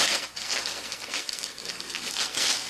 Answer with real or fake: fake